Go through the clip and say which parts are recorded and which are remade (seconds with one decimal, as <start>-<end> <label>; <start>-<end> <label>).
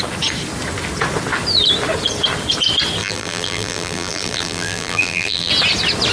0.0-3.0 recorded; 3.0-5.5 remade; 5.5-6.1 recorded